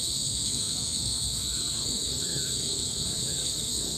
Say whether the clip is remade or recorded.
remade